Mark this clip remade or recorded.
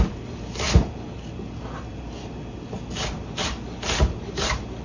recorded